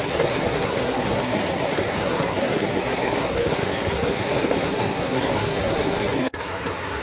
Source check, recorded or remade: remade